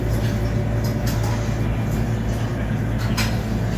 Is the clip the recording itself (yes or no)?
yes